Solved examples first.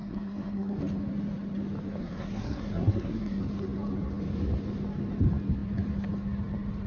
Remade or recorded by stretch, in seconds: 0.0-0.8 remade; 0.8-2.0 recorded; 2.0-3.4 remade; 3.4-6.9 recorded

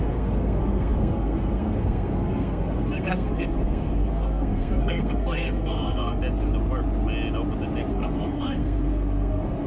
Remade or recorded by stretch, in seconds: 0.0-6.2 remade; 6.2-7.9 recorded; 7.9-9.7 remade

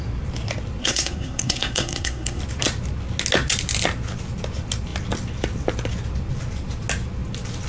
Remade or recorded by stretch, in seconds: 0.0-0.8 recorded; 0.8-2.4 remade; 2.4-7.7 recorded

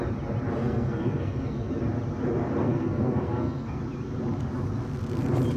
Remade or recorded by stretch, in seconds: 0.0-0.6 recorded; 0.6-1.7 remade; 1.7-2.6 recorded; 2.6-3.8 remade; 3.8-5.6 recorded

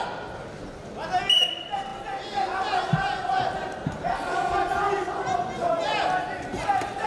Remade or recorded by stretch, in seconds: 0.0-7.1 recorded

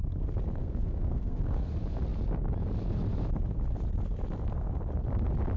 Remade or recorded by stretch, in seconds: 0.0-0.6 recorded; 0.6-1.7 remade; 1.7-5.6 recorded

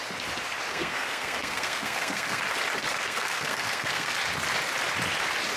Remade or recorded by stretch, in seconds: 0.0-0.7 recorded; 0.7-2.4 remade; 2.4-2.9 recorded; 2.9-4.1 remade; 4.1-5.6 recorded

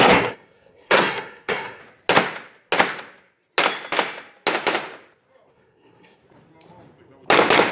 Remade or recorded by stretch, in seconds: 0.0-1.8 remade; 1.8-5.5 recorded; 5.5-6.2 remade; 6.2-7.7 recorded